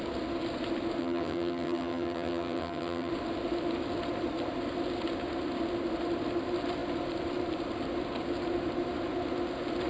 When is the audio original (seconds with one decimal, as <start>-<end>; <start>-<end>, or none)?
0.0-1.0; 3.1-9.9